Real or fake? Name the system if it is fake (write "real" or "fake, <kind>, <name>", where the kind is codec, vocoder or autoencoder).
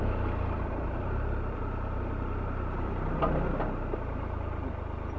real